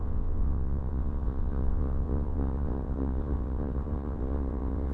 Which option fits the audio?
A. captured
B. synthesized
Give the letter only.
B